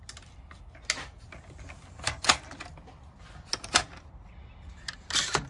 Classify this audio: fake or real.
real